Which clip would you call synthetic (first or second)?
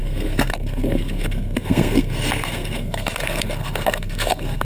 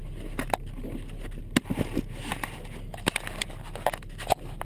first